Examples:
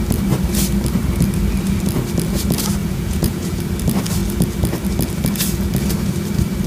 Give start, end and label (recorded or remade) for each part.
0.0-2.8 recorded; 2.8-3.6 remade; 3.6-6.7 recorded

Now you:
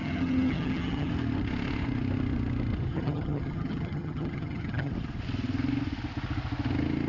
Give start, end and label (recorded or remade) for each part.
0.0-1.1 remade; 1.1-2.9 recorded; 2.9-4.9 remade; 4.9-7.1 recorded

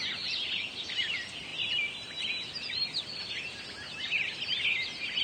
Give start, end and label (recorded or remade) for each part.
0.0-5.2 recorded

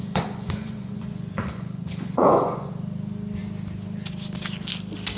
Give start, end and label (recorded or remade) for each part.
0.0-2.7 remade; 2.7-5.2 recorded

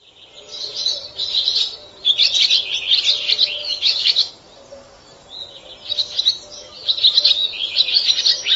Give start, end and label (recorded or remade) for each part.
0.0-3.6 recorded; 3.6-4.3 remade; 4.3-8.6 recorded